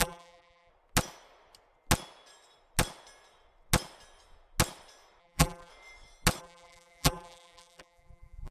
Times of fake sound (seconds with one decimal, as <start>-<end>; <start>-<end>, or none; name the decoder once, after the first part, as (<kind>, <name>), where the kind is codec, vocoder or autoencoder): 0.0-0.7 (vocoder, BigVGAN v2); 5.2-5.7; 6.4-8.5